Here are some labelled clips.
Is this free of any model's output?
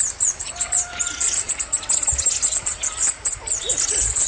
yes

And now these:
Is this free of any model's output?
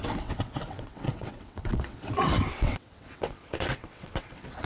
no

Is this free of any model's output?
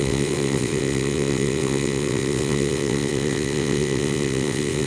no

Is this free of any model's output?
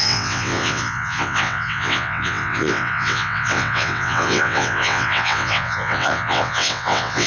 no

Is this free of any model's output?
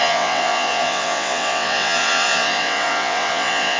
no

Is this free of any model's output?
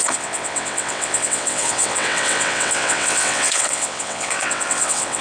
no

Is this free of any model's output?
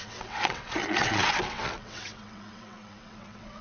no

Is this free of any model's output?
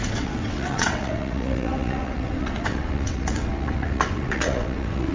no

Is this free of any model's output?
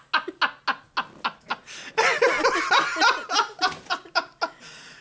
yes